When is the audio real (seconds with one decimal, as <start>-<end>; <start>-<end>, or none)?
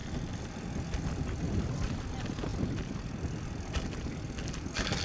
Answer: 0.0-5.0